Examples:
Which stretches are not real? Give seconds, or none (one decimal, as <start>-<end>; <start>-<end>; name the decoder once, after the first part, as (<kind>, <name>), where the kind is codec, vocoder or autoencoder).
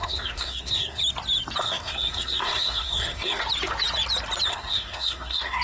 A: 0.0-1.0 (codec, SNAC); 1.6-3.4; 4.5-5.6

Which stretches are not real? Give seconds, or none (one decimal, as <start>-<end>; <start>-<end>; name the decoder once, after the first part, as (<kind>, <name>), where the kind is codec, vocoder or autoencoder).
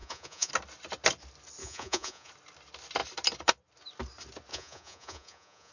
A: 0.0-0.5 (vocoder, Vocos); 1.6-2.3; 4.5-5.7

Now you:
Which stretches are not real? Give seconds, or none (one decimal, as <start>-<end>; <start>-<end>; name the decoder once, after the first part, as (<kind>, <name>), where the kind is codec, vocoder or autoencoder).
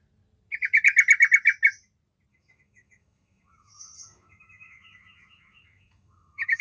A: 2.3-6.6 (autoencoder, DAC-VAE)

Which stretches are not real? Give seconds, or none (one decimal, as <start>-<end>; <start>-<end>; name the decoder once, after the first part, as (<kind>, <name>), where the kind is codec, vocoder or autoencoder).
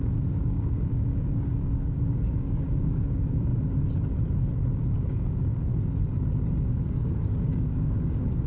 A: 0.0-3.5 (codec, DAC); 4.9-5.7; 6.7-8.5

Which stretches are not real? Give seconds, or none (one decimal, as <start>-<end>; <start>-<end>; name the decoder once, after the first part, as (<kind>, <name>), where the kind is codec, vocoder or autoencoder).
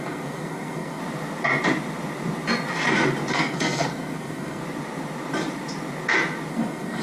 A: 0.0-1.0 (codec, SNAC); 3.3-4.6; 6.5-7.0